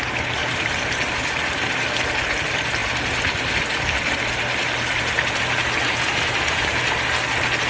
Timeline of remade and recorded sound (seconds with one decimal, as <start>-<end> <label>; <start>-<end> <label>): 0.0-0.4 recorded; 0.4-1.1 remade; 1.1-5.8 recorded; 5.8-7.0 remade; 7.0-7.7 recorded